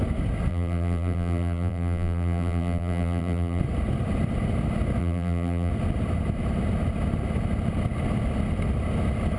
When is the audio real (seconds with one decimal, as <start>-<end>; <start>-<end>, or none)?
0.0-0.5; 3.6-5.0; 5.7-9.4